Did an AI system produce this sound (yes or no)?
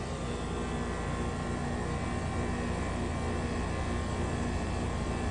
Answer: no